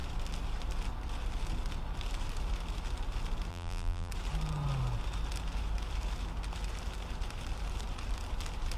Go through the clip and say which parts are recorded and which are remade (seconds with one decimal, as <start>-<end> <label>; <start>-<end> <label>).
0.0-3.5 recorded; 3.5-4.1 remade; 4.1-8.8 recorded

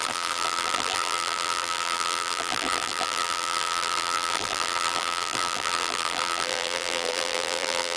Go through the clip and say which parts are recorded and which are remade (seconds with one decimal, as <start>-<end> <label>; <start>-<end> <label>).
0.0-8.0 remade

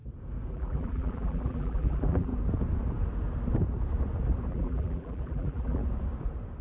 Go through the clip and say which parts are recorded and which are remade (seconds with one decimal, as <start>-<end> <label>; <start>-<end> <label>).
0.0-0.5 recorded; 0.5-2.3 remade; 2.3-4.5 recorded; 4.5-5.8 remade; 5.8-6.6 recorded

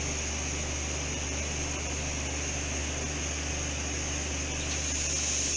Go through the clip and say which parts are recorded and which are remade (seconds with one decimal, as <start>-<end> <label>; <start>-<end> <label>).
0.0-5.6 recorded

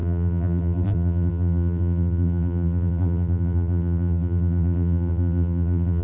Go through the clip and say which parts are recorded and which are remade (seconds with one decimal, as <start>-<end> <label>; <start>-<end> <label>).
0.0-6.0 remade